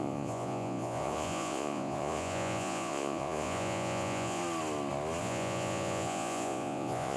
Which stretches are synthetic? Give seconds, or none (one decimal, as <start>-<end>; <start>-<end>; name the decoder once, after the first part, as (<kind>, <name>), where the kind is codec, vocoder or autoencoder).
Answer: 0.0-4.4 (vocoder, Vocos); 5.2-7.2